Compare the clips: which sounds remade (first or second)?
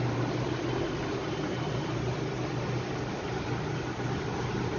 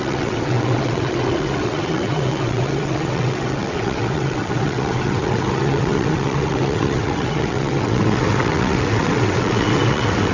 second